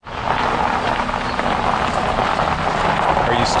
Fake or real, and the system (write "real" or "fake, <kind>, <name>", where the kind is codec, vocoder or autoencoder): real